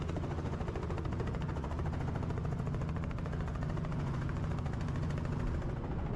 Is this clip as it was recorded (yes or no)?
no